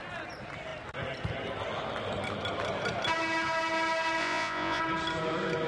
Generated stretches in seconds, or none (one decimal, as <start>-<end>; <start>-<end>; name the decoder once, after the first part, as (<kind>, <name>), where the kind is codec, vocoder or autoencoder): 4.2-4.8 (vocoder, Vocos)